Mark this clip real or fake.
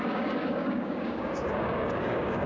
fake